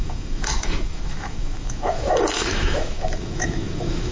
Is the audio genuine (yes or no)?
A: no